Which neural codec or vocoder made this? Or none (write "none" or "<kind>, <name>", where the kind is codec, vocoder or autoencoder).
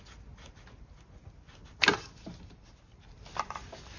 none